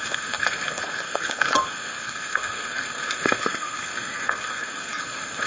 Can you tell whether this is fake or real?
fake